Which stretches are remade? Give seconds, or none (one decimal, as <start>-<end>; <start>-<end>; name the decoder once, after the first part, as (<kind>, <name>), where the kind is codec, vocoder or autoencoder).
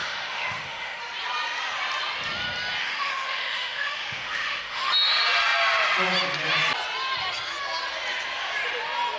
0.0-1.0 (autoencoder, DAC-VAE); 2.8-4.9